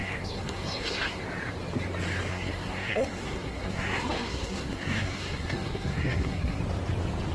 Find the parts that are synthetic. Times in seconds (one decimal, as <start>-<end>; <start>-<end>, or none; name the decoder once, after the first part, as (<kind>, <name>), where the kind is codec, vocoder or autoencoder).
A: 0.0-1.2 (codec, SNAC); 2.3-6.6